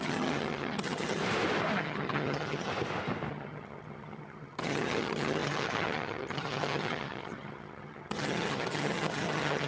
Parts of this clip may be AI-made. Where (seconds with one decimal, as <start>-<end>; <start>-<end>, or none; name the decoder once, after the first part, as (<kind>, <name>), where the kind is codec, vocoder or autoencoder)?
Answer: 0.0-1.2 (vocoder, HiFi-GAN); 1.8-2.7; 3.3-9.7